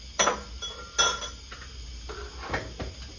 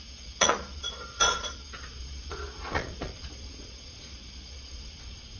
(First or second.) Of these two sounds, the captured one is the first